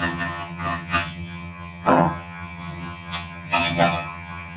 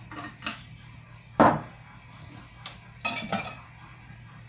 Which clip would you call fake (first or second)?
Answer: first